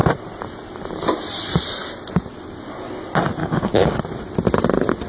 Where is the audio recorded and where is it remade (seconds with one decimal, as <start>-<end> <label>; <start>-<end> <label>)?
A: 0.0-3.4 recorded; 3.4-4.0 remade; 4.0-5.1 recorded